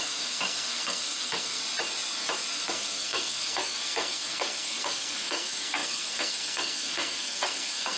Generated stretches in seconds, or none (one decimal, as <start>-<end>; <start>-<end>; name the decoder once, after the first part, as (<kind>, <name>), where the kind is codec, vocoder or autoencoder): 0.0-1.6 (codec, SNAC); 2.5-8.0